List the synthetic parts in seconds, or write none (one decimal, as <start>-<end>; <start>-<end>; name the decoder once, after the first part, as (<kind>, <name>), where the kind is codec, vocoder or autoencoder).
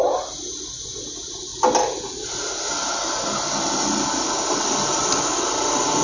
none